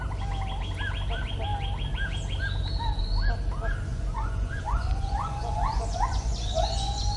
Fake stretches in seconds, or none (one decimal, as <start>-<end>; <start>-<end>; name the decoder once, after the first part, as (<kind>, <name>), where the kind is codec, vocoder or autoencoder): 3.9-7.2 (vocoder, Vocos)